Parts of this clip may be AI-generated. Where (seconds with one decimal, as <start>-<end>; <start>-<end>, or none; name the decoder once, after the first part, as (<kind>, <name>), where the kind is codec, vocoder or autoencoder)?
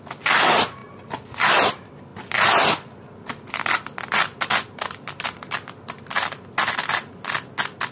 none